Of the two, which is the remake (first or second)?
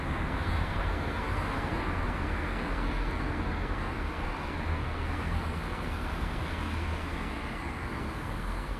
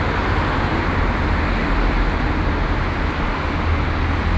first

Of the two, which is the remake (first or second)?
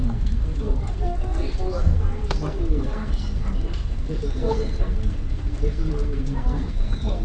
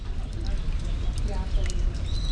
first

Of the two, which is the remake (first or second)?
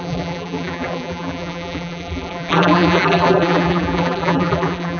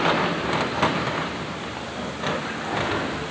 first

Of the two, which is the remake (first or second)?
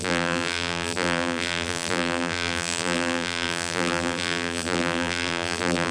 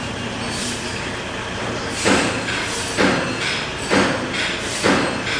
first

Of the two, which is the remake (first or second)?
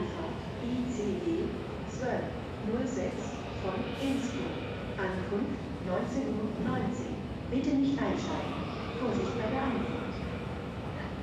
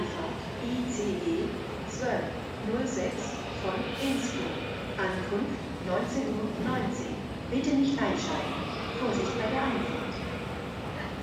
first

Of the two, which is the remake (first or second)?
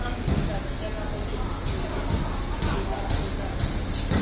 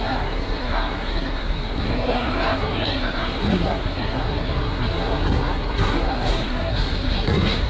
second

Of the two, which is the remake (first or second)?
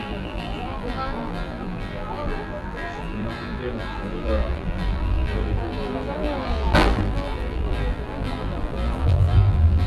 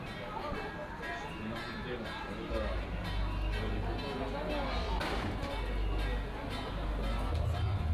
first